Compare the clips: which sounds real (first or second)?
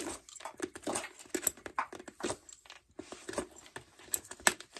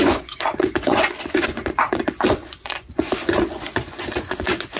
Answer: first